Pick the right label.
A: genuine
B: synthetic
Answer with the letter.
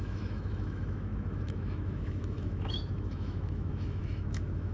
B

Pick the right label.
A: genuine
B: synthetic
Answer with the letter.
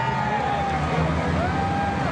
A